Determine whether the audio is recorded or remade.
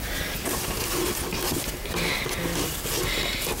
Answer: recorded